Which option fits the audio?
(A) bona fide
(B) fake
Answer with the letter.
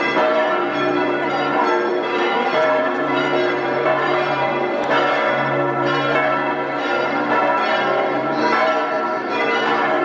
B